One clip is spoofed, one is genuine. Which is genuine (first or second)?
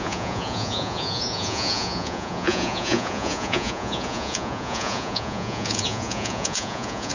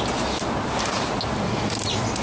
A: second